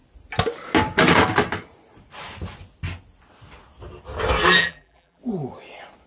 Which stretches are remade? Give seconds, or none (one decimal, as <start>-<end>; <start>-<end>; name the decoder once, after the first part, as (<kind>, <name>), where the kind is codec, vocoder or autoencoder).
4.6-5.2 (vocoder, BigVGAN v2)